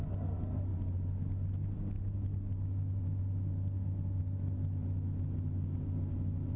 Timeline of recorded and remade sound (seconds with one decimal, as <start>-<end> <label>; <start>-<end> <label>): 0.0-6.6 recorded